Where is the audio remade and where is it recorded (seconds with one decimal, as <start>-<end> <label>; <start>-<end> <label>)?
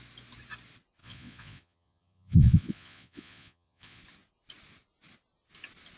0.0-1.0 recorded; 1.0-4.0 remade; 4.0-6.0 recorded